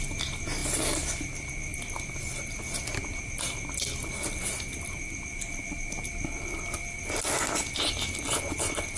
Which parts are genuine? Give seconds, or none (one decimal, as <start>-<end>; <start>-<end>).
0.0-9.0